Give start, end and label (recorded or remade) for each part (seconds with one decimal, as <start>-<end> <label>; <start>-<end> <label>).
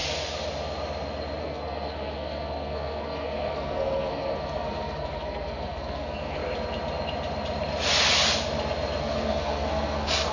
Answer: 0.0-1.4 recorded; 1.4-6.4 remade; 6.4-9.0 recorded; 9.0-10.3 remade